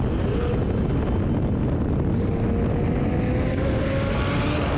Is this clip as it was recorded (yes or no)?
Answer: yes